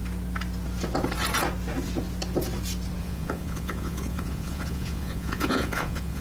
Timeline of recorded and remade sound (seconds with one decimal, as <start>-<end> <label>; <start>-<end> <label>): 0.0-3.0 recorded; 3.0-6.2 remade